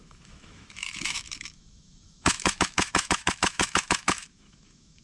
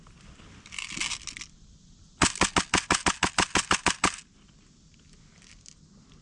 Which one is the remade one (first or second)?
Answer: first